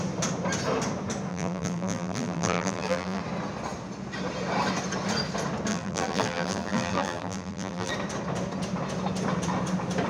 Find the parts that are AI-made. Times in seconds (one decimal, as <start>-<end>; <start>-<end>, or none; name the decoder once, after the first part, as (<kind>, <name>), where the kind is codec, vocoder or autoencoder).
1.3-3.2 (vocoder, BigVGAN v2); 5.7-7.9